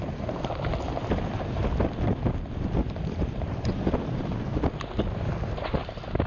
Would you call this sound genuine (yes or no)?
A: yes